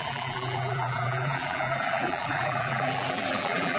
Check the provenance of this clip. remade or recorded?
remade